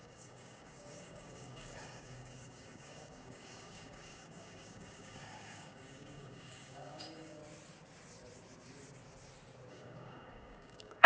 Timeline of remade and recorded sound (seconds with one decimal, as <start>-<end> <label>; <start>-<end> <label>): 0.0-7.4 remade; 7.4-9.7 recorded; 9.7-11.1 remade